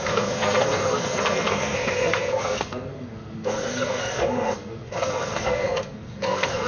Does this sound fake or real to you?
fake